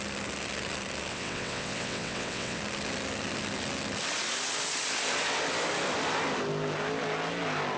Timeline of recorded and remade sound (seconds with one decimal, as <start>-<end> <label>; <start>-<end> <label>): 0.0-1.1 recorded; 1.1-2.6 remade; 2.6-7.8 recorded